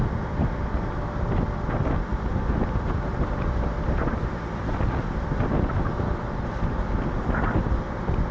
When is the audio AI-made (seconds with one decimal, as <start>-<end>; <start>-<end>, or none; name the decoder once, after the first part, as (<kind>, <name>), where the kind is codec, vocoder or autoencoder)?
none